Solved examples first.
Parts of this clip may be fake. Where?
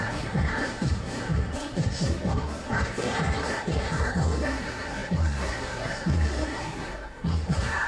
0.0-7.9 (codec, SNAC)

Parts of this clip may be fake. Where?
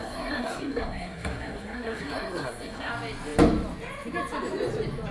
0.0-2.9 (codec, SNAC)